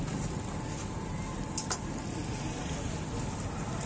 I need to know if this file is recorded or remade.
recorded